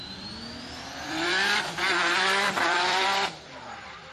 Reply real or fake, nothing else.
fake